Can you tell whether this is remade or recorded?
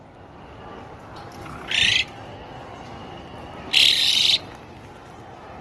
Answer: recorded